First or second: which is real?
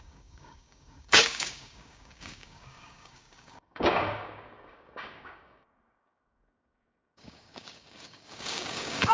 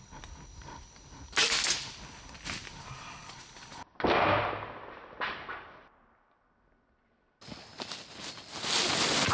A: second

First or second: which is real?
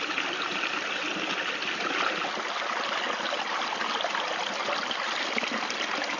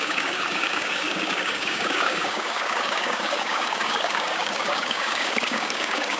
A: first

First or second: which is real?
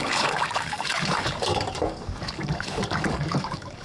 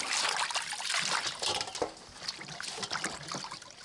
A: second